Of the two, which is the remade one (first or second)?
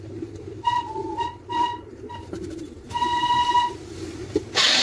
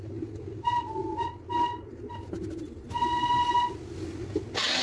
first